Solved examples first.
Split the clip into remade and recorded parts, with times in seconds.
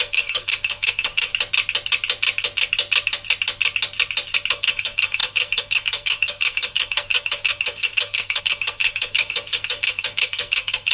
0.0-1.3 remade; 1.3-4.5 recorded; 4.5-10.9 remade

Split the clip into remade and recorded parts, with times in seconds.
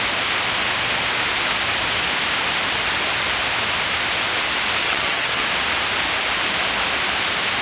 0.0-4.8 recorded; 4.8-5.4 remade; 5.4-7.6 recorded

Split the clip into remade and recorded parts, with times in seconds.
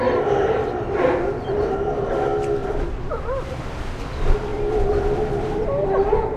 0.0-2.6 recorded; 2.6-3.5 remade; 3.5-6.4 recorded